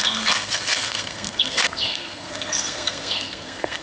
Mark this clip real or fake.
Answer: fake